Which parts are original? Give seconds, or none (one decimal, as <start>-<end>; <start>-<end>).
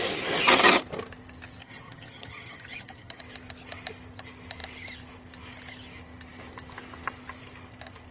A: 0.0-1.6; 3.2-8.1